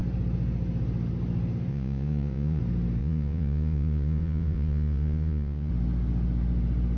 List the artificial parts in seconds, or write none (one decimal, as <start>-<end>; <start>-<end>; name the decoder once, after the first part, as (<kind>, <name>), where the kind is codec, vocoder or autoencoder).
1.7-2.6 (vocoder, Vocos); 3.0-5.7